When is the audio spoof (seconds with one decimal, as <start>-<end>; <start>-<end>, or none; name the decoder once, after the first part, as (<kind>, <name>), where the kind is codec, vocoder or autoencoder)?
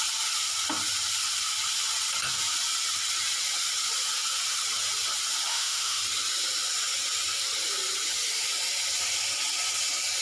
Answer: 5.5-6.0 (autoencoder, DAC-VAE)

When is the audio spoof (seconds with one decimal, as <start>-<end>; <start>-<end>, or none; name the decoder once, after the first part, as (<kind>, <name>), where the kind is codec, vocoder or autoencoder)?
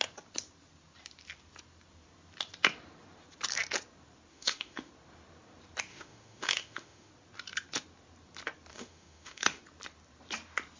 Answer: 4.3-4.9 (autoencoder, DAC-VAE); 5.9-7.1; 8.7-9.6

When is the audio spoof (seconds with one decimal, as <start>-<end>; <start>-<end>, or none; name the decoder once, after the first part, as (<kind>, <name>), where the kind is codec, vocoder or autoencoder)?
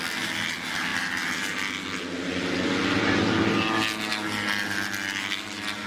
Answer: none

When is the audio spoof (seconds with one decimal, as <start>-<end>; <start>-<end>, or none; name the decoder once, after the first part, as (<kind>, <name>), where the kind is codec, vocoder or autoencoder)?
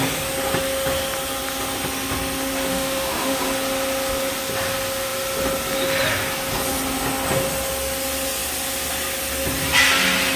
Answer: 2.7-3.4 (autoencoder, DAC-VAE)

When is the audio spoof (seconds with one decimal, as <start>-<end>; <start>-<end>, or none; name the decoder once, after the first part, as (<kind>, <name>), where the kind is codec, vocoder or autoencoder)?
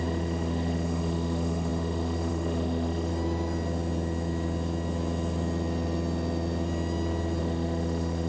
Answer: 0.0-3.1 (autoencoder, DAC-VAE); 7.4-8.3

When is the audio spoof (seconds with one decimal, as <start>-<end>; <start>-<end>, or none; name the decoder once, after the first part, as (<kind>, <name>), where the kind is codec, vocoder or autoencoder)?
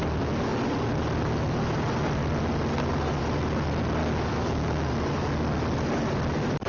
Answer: 4.0-4.9 (autoencoder, DAC-VAE)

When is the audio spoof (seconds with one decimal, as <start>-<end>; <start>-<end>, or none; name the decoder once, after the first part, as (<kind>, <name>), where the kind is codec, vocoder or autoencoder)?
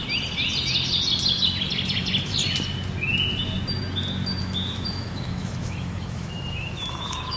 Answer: 4.4-7.4 (autoencoder, DAC-VAE)